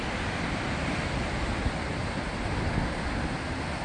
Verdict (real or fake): real